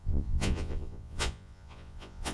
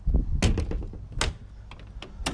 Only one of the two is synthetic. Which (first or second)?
first